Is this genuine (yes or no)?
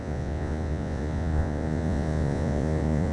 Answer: no